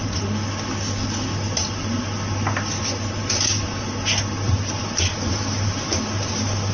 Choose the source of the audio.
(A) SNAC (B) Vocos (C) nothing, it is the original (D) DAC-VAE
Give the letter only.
C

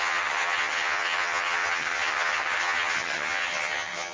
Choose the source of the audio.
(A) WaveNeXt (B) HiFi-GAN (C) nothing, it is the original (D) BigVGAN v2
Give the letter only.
B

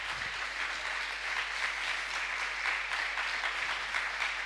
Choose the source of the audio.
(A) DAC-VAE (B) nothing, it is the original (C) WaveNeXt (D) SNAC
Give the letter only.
B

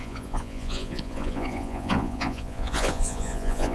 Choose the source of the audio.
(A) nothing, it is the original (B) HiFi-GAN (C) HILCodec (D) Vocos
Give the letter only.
D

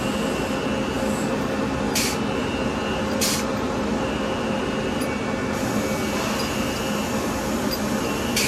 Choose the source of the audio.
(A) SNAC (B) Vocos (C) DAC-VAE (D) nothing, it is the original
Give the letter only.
D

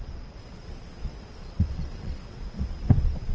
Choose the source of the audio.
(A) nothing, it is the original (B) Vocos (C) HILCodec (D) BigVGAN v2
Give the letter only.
B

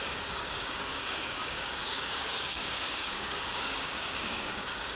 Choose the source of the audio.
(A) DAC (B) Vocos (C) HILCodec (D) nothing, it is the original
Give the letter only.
A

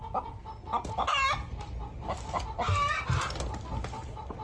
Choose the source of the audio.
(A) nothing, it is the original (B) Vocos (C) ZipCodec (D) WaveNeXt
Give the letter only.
A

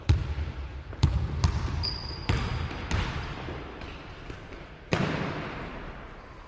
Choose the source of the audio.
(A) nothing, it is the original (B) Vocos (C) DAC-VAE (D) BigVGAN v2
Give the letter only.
D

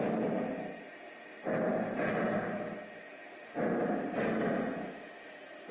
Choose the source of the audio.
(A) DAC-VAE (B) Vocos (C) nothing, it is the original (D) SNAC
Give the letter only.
C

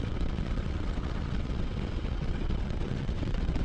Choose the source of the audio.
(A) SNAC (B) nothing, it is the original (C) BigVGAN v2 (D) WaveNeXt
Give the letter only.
D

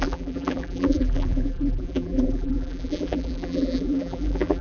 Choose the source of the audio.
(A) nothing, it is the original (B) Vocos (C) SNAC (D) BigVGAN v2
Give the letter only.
D